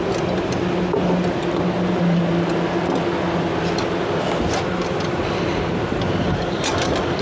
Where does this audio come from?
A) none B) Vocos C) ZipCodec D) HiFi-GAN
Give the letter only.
A